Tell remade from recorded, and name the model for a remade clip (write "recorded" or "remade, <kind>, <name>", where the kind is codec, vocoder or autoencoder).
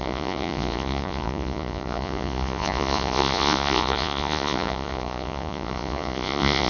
remade, vocoder, Vocos